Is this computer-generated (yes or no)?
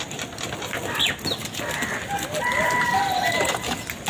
no